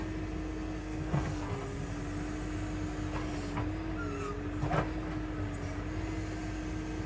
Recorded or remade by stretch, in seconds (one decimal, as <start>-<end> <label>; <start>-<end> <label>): 0.0-0.8 recorded; 0.8-1.5 remade; 1.5-7.1 recorded